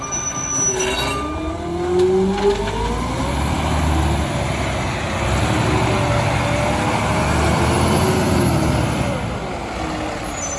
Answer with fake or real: real